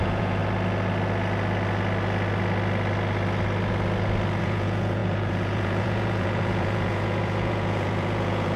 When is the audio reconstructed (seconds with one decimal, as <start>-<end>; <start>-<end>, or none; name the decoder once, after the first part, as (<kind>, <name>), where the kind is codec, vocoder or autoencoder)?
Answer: 0.0-0.4 (vocoder, Vocos); 4.4-8.6